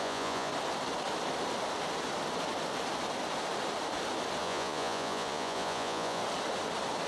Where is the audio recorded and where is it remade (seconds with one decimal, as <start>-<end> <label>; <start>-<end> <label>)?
0.0-0.5 remade; 0.5-4.4 recorded; 4.4-6.2 remade; 6.2-7.1 recorded